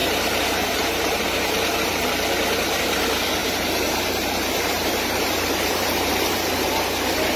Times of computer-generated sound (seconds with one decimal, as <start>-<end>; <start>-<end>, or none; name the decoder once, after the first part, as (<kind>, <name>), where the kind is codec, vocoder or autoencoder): 0.0-1.9 (vocoder, BigVGAN v2); 3.4-6.1